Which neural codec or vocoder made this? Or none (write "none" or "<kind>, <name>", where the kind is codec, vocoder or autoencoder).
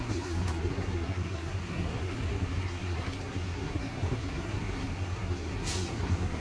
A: codec, SNAC